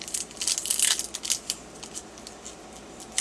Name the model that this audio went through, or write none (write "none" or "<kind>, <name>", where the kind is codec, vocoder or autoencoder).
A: none